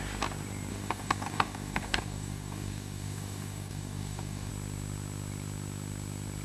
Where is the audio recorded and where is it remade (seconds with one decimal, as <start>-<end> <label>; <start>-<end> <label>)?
0.0-0.7 recorded; 0.7-4.5 remade; 4.5-6.4 recorded